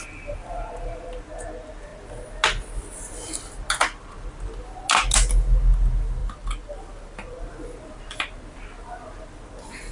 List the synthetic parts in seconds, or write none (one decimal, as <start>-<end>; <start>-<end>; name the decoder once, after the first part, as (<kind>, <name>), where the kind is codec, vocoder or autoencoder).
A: 6.2-7.5 (vocoder, BigVGAN v2)